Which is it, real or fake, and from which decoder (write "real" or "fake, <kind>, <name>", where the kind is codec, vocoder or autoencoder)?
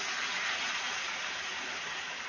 fake, vocoder, Vocos